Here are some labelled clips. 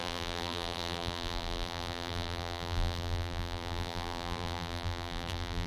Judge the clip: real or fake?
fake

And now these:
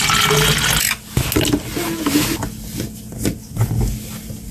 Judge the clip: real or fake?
real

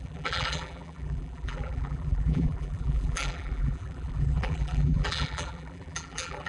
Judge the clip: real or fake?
fake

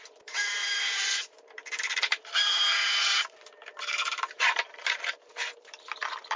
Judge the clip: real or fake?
fake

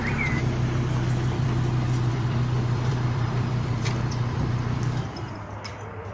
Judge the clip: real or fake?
fake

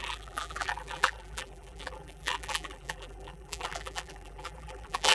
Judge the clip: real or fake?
fake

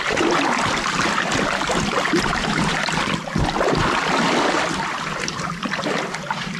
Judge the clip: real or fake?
fake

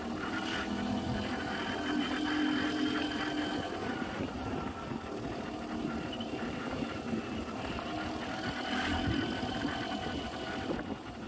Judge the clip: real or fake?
real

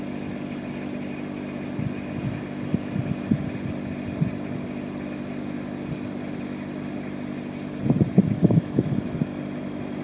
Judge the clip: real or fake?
fake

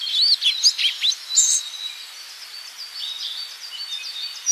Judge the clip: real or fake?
real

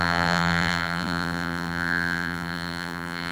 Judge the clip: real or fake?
fake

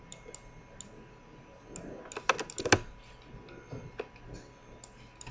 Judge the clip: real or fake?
real